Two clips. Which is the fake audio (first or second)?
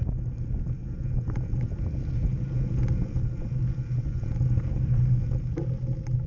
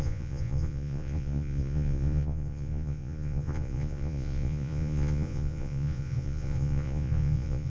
second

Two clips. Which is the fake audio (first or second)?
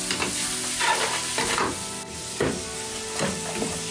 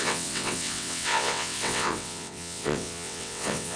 second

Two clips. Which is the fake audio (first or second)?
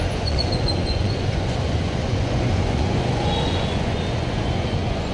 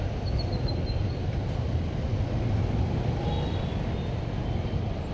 first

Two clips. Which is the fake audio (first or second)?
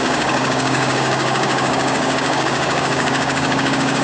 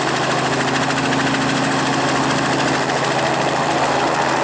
first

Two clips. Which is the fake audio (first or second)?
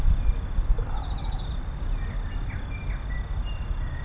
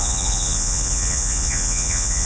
second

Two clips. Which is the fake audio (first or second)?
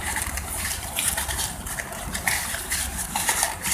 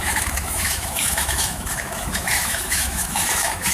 second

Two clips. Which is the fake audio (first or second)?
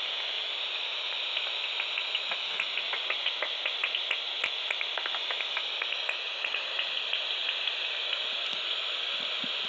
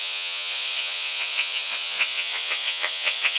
second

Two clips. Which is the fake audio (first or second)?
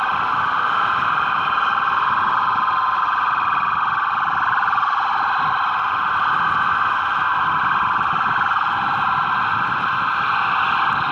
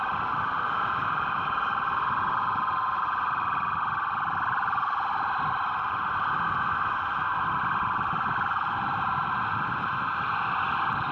second